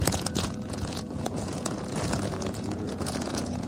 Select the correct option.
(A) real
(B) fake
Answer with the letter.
B